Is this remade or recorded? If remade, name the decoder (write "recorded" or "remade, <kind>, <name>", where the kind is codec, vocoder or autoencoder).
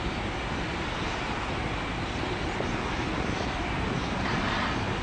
recorded